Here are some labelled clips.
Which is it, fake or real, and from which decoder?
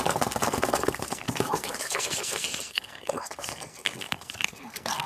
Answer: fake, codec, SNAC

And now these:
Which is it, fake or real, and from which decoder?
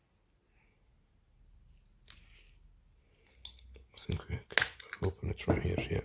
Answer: real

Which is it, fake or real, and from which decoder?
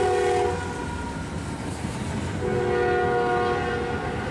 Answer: real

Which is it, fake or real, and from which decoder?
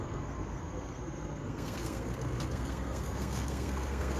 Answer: fake, codec, SNAC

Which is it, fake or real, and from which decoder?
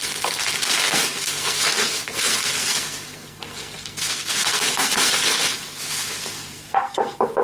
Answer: fake, codec, SNAC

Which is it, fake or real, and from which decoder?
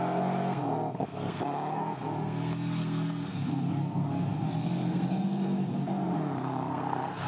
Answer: fake, codec, SNAC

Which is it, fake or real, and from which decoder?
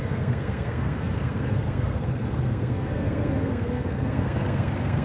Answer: fake, codec, SNAC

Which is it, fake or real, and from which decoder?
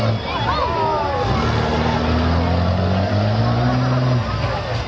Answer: real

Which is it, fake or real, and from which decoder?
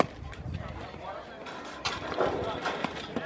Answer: real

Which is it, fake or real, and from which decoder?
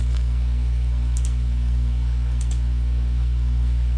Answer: fake, codec, SNAC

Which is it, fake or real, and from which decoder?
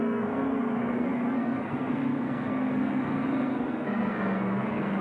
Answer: fake, codec, SNAC